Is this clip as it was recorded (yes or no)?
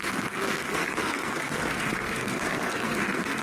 no